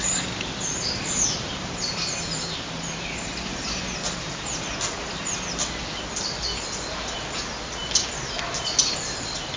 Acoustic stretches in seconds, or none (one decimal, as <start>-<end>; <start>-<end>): 0.0-9.6